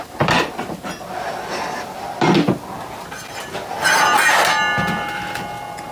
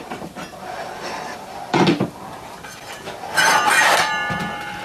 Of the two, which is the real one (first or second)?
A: first